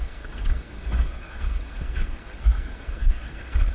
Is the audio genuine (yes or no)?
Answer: no